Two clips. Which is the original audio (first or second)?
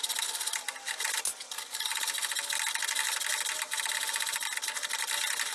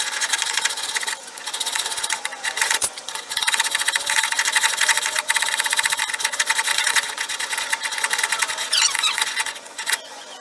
first